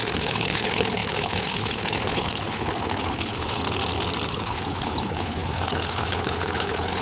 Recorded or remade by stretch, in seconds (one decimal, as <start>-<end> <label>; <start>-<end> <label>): 0.0-3.6 remade; 3.6-4.3 recorded; 4.3-7.0 remade